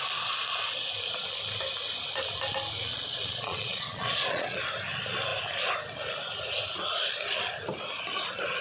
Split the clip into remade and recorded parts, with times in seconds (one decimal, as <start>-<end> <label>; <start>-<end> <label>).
0.0-2.9 recorded; 2.9-4.6 remade; 4.6-8.6 recorded